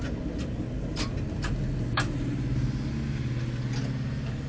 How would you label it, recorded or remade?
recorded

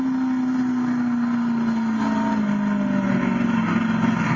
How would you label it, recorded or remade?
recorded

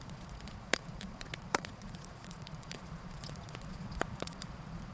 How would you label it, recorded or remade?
remade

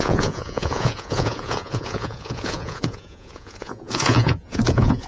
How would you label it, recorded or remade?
remade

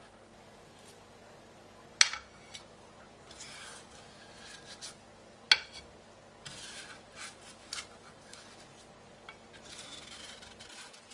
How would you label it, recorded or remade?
recorded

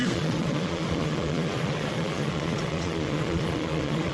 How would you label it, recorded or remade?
remade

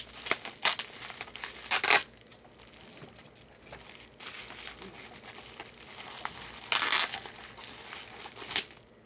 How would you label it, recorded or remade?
recorded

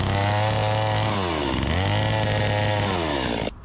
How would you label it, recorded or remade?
recorded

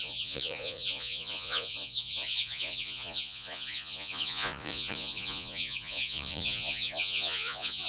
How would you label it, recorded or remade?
remade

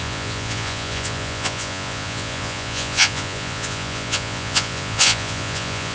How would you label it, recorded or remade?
remade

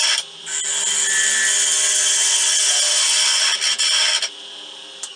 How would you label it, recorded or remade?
recorded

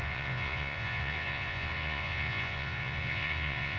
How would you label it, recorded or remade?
remade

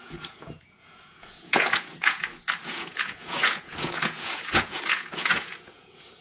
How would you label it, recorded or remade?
remade